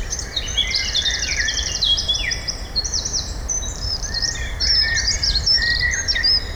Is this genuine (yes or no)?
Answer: no